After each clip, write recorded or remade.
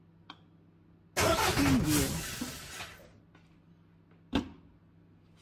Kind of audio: recorded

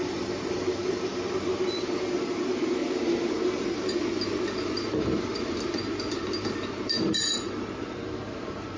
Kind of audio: remade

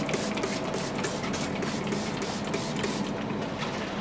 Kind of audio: recorded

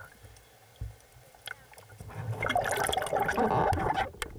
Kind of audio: recorded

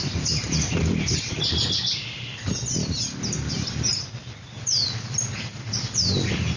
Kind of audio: remade